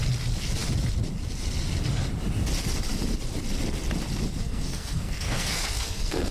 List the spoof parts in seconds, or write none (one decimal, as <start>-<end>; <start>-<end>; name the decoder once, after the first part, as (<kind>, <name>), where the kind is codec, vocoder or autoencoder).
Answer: 4.4-6.3 (codec, SNAC)